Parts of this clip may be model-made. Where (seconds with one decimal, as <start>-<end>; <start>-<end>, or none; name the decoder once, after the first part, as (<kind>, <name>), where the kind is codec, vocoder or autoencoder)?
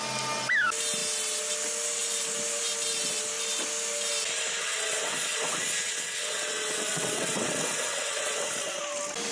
4.6-8.8 (vocoder, WaveNeXt)